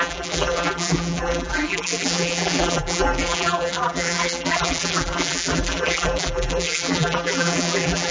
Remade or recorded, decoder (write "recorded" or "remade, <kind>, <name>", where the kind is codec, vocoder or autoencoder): remade, vocoder, BigVGAN v2